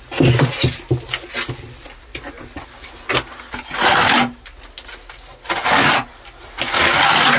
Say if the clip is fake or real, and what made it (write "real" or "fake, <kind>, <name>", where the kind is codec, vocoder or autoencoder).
real